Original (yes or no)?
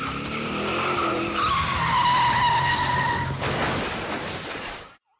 no